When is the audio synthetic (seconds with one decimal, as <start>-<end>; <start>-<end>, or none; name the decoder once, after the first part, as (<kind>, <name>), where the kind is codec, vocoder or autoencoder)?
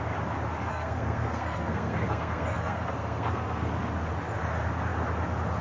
0.7-3.7 (codec, SNAC)